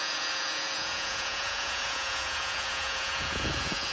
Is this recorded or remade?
remade